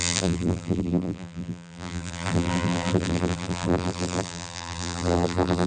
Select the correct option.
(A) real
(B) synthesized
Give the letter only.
B